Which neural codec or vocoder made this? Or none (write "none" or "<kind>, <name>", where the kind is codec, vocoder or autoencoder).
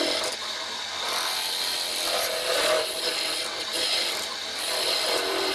none